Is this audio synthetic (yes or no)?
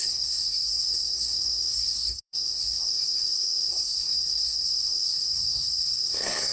yes